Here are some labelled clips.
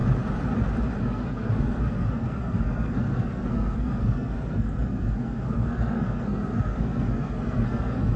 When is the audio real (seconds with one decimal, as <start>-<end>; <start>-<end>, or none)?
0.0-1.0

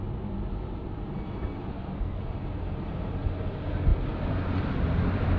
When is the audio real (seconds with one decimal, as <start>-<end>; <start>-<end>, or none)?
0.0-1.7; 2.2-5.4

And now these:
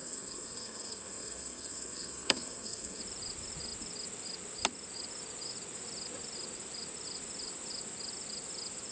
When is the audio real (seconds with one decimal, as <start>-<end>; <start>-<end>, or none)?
3.0-8.9